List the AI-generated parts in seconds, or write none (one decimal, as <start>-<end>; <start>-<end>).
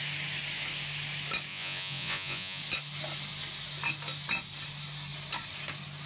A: 1.5-2.6